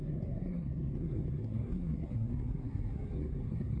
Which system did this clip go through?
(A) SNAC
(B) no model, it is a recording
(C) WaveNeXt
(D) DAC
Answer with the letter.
A